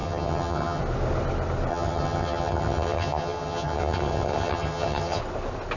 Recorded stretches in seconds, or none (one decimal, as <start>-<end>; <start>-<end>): 0.8-1.7; 5.2-5.8